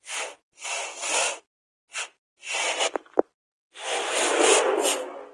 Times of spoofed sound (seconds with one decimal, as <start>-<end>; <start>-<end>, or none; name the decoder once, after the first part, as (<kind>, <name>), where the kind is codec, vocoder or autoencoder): none